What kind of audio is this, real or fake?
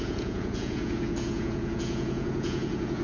fake